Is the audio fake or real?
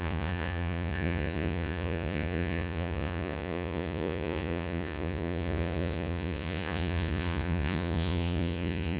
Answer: fake